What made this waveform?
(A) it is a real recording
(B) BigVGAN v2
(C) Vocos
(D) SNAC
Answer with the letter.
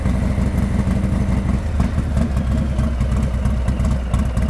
A